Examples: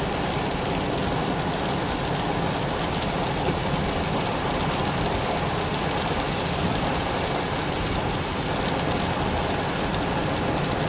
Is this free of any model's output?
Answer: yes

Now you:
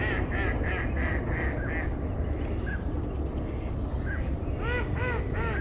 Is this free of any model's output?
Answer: yes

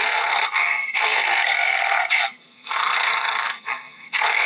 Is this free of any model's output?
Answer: no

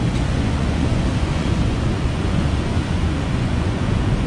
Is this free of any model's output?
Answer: no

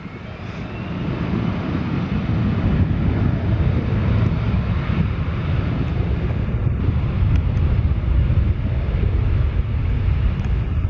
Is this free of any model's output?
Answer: yes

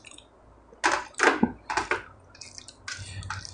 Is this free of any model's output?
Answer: yes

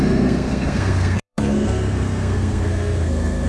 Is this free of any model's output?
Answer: no